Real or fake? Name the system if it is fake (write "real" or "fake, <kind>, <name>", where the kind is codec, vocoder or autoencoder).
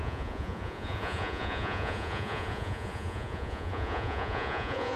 fake, vocoder, Vocos